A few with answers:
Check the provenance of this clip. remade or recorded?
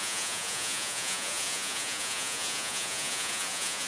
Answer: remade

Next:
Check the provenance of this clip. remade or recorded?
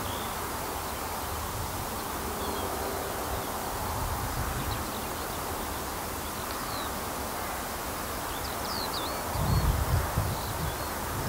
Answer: recorded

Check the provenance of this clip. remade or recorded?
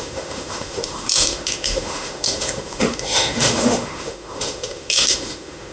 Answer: remade